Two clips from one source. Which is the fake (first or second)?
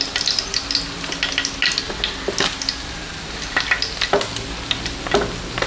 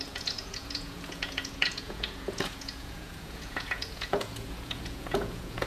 second